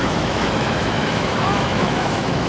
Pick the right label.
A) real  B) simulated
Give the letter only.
B